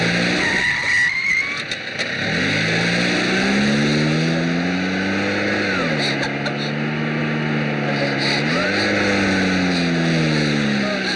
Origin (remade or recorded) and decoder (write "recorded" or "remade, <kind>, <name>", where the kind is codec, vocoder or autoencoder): recorded